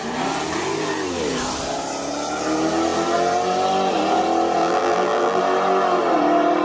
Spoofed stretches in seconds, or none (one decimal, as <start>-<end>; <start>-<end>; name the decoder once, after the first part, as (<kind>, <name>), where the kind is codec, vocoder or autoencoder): 4.6-5.4 (vocoder, BigVGAN v2)

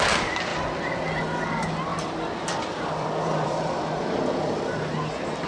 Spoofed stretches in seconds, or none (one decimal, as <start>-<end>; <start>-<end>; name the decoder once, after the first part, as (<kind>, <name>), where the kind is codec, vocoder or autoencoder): 0.5-1.2 (vocoder, BigVGAN v2); 1.9-3.8

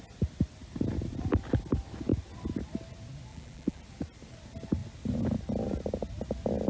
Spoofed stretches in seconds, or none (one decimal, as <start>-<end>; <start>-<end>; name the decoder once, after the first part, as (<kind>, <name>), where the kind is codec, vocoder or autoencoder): 3.3-3.8 (vocoder, BigVGAN v2)

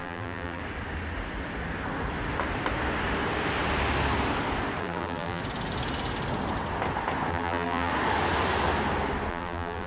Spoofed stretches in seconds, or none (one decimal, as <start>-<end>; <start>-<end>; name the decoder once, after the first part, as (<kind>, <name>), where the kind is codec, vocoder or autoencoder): 0.0-0.6 (vocoder, BigVGAN v2); 4.8-5.4; 7.3-7.9; 9.3-9.9

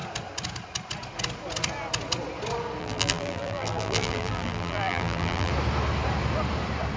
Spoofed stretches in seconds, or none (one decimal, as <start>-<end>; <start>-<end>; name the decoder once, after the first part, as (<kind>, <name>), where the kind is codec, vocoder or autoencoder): 2.8-5.5 (vocoder, BigVGAN v2)